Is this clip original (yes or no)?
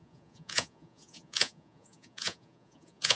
no